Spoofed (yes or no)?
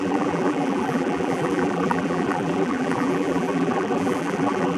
yes